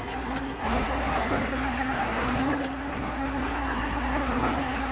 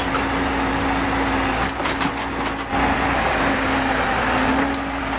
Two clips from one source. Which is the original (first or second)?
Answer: second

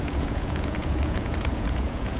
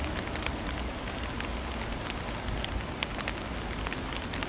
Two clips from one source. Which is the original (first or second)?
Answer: second